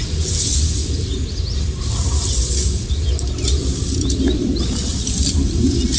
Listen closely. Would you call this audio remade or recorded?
recorded